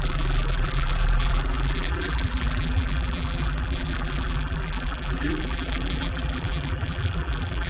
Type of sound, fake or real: fake